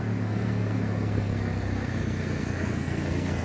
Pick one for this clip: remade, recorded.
remade